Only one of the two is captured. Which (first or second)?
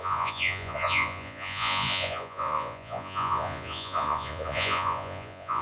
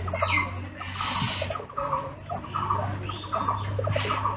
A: second